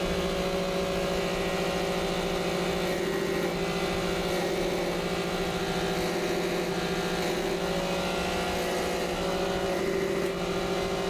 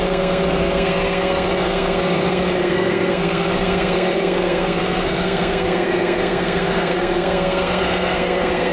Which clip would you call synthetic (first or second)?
second